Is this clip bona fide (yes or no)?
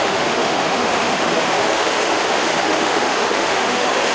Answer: no